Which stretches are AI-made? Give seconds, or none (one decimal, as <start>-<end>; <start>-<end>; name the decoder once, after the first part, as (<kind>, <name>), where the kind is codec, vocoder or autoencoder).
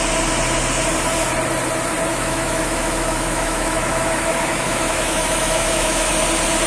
2.1-6.1 (autoencoder, DAC-VAE)